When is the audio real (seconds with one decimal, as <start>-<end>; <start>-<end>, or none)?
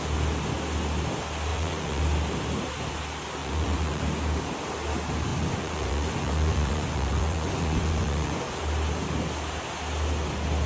0.0-1.5; 2.0-3.4; 4.0-5.3; 8.6-10.7